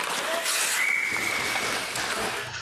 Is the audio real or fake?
real